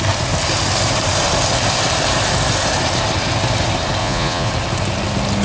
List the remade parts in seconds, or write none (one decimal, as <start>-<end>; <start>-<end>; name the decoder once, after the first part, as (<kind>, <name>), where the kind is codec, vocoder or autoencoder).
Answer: 4.0-4.5 (vocoder, Vocos)